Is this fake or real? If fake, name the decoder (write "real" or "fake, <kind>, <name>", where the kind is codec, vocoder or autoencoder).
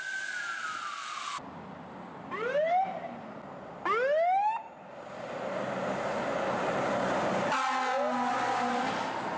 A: real